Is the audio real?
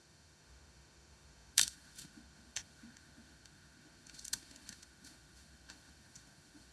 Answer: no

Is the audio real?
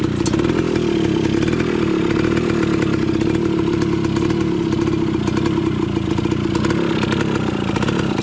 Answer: yes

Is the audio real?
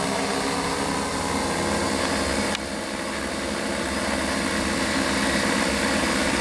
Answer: yes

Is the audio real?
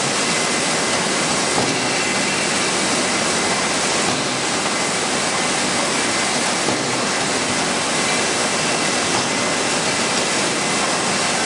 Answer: yes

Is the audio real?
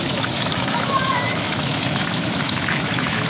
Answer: no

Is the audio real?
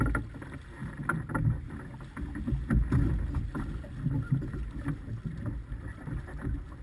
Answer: yes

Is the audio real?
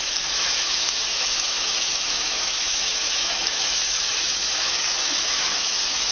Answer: no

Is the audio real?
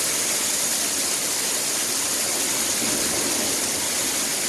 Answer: yes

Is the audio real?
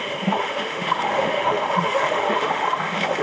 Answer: no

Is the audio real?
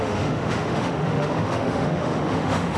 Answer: no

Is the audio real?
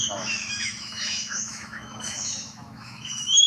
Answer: no